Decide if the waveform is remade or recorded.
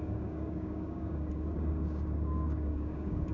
remade